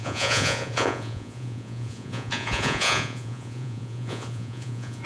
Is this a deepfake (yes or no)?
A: yes